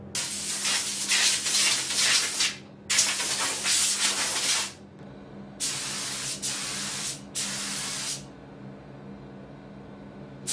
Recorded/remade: recorded